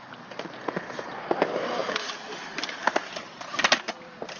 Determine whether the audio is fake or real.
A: real